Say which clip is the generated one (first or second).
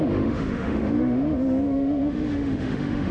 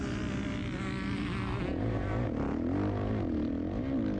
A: first